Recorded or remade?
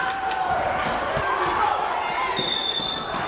recorded